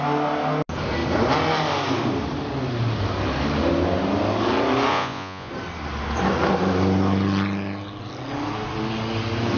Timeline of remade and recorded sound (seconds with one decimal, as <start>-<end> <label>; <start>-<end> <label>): 0.0-4.9 recorded; 4.9-5.5 remade; 5.5-9.6 recorded